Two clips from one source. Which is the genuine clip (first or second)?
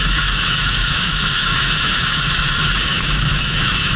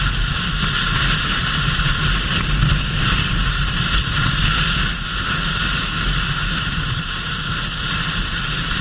second